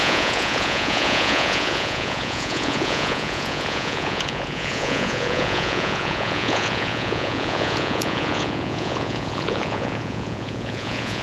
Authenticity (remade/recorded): remade